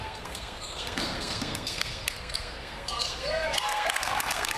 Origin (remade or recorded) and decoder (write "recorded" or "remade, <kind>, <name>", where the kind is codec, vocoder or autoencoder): remade, codec, SNAC